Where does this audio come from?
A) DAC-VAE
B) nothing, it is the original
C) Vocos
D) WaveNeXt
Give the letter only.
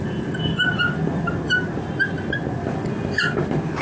B